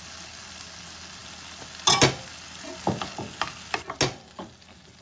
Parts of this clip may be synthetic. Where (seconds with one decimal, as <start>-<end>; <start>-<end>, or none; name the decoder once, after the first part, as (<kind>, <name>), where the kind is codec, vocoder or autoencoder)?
none